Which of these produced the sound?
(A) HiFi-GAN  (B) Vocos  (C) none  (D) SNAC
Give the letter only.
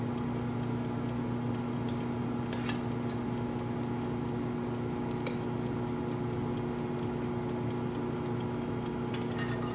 C